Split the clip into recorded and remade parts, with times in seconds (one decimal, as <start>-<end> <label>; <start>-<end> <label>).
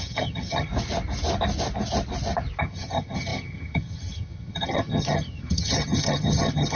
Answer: 0.0-0.7 remade; 0.7-2.6 recorded; 2.6-6.8 remade